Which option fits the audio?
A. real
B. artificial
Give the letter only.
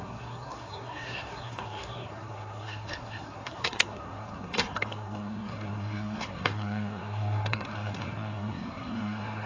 B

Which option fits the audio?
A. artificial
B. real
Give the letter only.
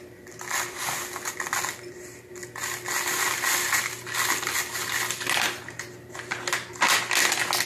B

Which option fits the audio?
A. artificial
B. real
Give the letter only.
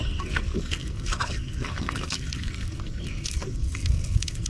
A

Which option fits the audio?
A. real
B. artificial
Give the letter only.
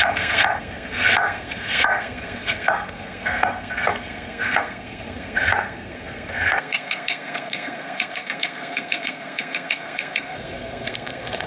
B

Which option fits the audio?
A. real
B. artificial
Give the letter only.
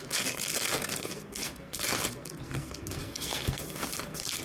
B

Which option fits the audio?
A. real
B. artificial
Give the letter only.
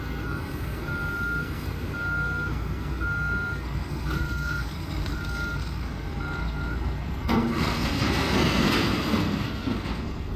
B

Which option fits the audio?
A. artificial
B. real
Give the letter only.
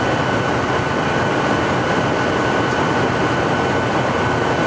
B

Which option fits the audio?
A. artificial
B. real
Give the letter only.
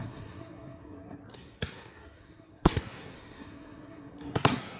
A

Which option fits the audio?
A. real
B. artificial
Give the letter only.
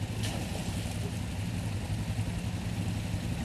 A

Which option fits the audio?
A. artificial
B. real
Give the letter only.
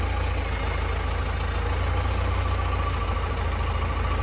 B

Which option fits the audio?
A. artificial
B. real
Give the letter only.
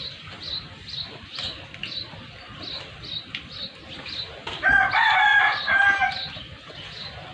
B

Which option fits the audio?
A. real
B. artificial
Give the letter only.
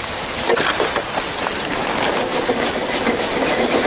A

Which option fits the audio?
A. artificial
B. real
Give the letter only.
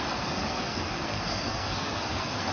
A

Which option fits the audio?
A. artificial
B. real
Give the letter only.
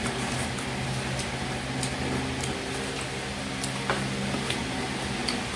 B